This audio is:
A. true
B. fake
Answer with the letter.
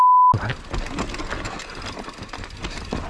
A